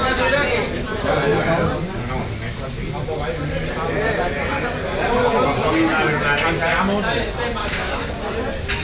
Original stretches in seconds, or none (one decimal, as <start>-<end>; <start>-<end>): 0.0-7.6; 8.1-8.8